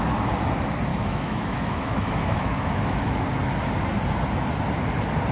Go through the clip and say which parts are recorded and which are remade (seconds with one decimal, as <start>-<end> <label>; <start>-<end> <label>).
0.0-0.9 recorded; 0.9-3.3 remade; 3.3-5.3 recorded